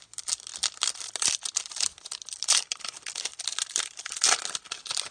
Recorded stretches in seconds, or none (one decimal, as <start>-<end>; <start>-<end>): 0.0-5.1